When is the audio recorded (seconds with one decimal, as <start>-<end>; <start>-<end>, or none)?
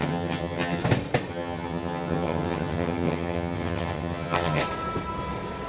0.8-1.3; 4.6-5.7